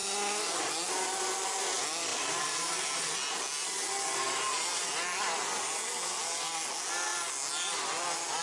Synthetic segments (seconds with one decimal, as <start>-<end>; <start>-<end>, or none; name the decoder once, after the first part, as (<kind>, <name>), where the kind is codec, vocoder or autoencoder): none